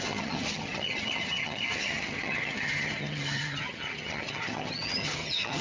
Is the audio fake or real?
fake